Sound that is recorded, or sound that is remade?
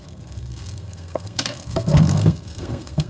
remade